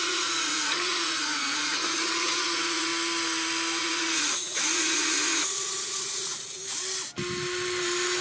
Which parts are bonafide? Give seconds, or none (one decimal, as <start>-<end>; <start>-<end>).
2.9-3.8; 6.6-8.2